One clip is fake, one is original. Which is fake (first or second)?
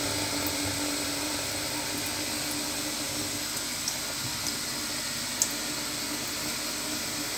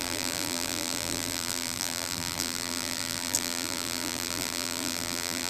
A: second